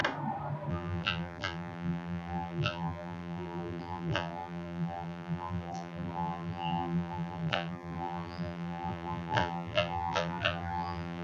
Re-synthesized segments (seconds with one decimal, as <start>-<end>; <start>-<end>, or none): 0.7-11.2

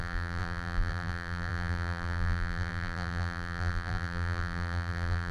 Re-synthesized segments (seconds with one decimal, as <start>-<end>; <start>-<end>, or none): 0.0-5.3

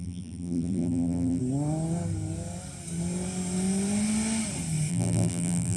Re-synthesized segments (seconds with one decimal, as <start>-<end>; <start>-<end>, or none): 0.0-1.4; 4.9-5.8

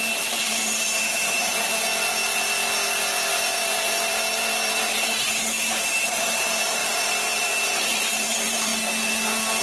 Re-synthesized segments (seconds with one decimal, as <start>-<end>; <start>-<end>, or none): 0.0-1.4; 3.3-8.7